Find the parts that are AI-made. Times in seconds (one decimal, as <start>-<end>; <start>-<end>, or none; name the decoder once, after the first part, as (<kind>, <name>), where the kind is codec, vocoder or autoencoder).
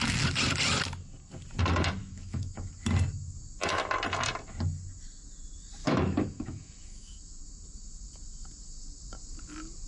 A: 2.0-2.7 (autoencoder, DAC-VAE); 5.8-7.4